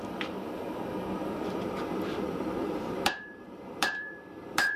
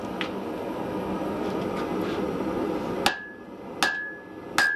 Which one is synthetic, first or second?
first